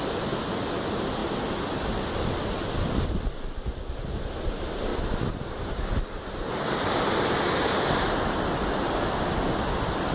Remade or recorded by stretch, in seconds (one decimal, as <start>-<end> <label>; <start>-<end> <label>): 0.0-10.1 recorded